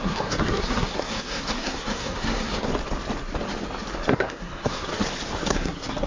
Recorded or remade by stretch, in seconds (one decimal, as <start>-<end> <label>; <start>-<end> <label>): 0.0-2.7 remade; 2.7-4.1 recorded; 4.1-4.9 remade; 4.9-5.5 recorded; 5.5-6.1 remade